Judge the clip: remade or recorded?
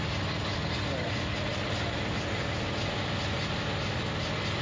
recorded